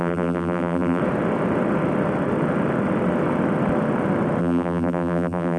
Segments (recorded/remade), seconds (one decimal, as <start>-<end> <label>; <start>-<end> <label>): 0.0-1.0 remade; 1.0-4.4 recorded; 4.4-5.6 remade